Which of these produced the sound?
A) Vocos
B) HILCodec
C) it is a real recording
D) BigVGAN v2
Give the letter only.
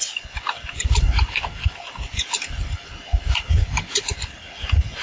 C